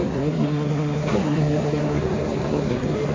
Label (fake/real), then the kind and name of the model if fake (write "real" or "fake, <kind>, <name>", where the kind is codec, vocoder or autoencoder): fake, codec, SNAC